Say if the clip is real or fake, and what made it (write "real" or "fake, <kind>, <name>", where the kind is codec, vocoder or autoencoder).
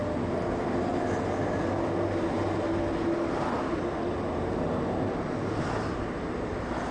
real